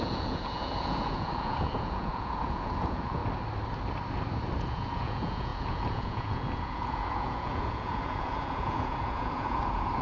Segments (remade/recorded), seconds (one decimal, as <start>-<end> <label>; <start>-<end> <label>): 0.0-3.2 remade; 3.2-4.6 recorded; 4.6-10.0 remade